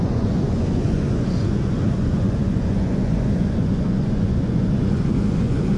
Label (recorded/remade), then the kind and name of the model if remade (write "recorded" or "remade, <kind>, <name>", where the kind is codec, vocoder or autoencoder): remade, vocoder, Vocos